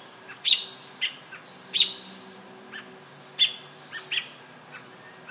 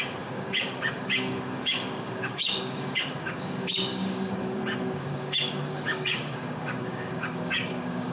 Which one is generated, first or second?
second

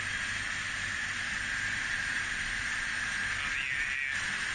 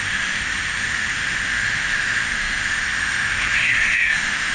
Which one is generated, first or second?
second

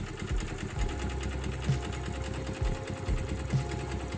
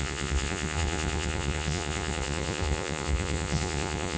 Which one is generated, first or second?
second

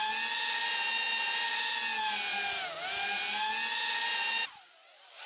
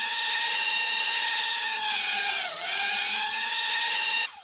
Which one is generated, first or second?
second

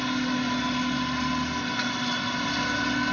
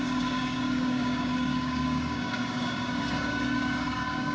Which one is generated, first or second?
second